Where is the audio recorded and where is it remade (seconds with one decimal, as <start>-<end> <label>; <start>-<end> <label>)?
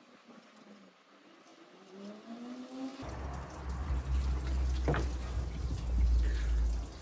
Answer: 0.0-7.0 recorded